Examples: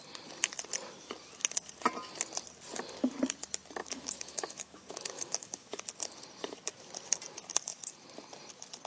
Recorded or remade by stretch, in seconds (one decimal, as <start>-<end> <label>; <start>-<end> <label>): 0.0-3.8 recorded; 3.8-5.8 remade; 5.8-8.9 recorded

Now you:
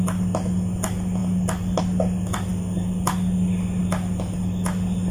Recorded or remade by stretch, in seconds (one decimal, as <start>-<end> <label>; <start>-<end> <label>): 0.0-5.1 recorded

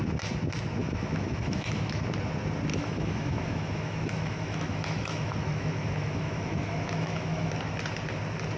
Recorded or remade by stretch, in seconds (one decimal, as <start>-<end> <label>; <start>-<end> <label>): 0.0-0.8 recorded; 0.8-2.0 remade; 2.0-2.7 recorded; 2.7-7.5 remade; 7.5-8.6 recorded

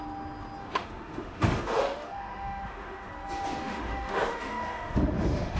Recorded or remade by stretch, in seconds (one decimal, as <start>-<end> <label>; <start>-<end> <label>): 0.0-0.6 recorded; 0.6-3.1 remade; 3.1-3.6 recorded; 3.6-5.6 remade

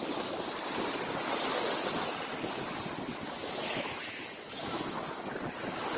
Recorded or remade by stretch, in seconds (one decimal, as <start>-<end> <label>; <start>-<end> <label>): 0.0-3.1 recorded; 3.1-5.2 remade; 5.2-6.0 recorded

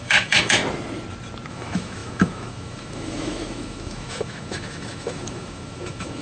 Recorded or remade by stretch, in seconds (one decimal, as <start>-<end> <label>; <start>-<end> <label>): 0.0-0.6 remade; 0.6-1.5 recorded; 1.5-6.2 remade

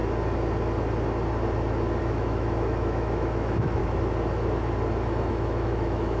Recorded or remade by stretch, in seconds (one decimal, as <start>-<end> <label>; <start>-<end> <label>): 0.0-2.0 recorded; 2.0-3.8 remade; 3.8-5.3 recorded; 5.3-6.2 remade